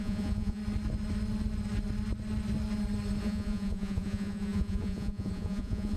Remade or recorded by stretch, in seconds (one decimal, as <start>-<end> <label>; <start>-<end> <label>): 0.0-0.6 remade; 0.6-3.2 recorded; 3.2-6.0 remade